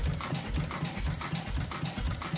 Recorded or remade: recorded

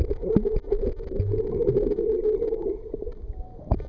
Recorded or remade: recorded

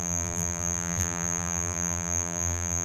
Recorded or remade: remade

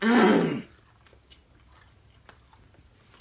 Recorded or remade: recorded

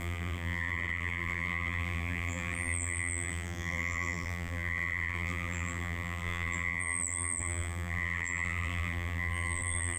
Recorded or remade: remade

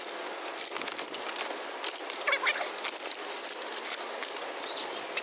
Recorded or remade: recorded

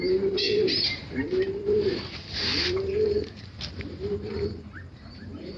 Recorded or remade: remade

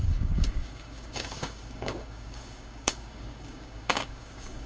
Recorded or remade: remade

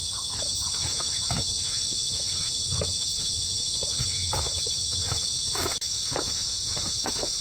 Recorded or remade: remade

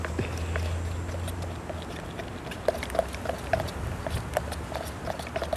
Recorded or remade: recorded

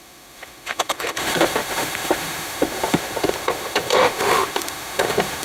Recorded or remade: remade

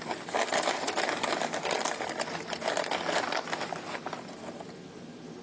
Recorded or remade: recorded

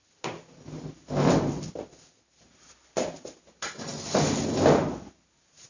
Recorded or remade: recorded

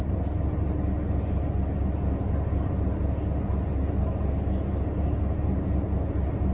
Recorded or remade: recorded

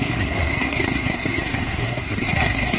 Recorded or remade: remade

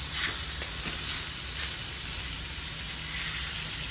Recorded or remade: recorded